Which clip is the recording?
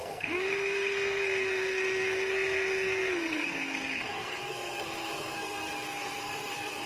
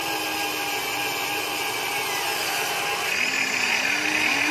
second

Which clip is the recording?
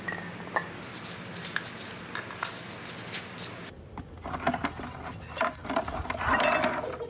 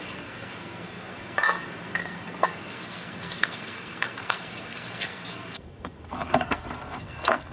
first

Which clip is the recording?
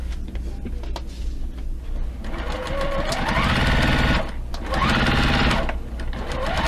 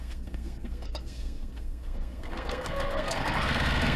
first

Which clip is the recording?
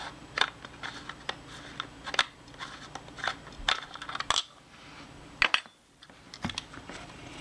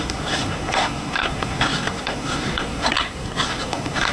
first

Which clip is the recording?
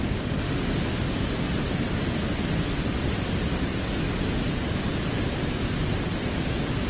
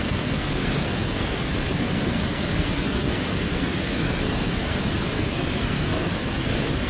first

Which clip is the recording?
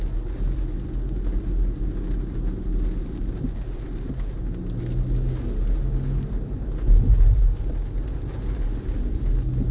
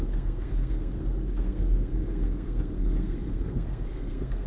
first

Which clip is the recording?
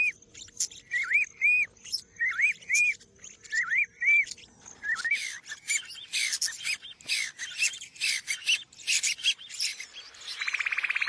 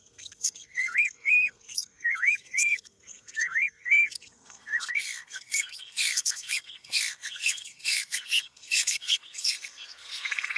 first